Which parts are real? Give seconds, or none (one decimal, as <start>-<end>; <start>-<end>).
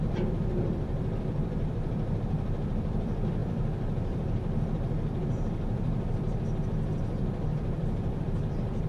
none